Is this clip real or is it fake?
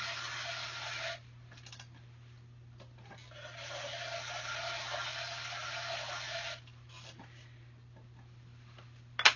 real